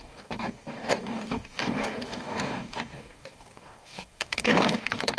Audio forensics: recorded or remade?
remade